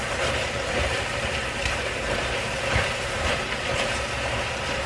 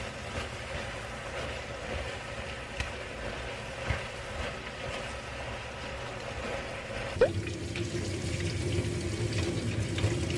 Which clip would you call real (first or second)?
second